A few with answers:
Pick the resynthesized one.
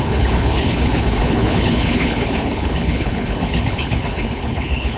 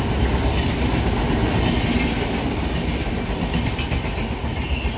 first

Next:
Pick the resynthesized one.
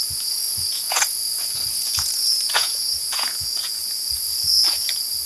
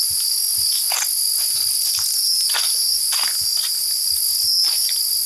first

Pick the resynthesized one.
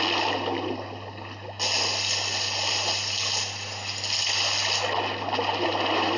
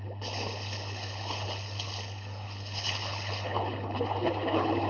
second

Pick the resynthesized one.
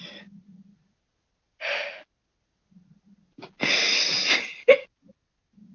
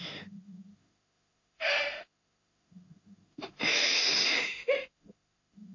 second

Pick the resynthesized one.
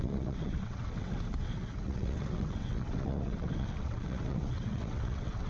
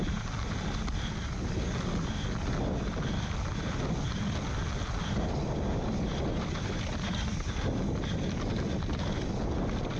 first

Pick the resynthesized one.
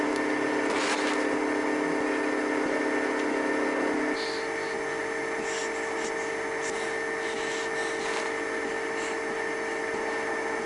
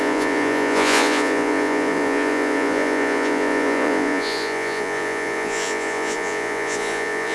second